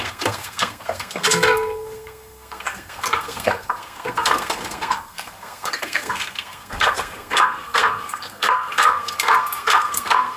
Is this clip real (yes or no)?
no